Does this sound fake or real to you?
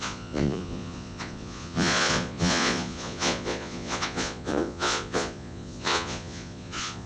fake